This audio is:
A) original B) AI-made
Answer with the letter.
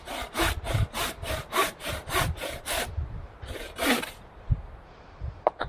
B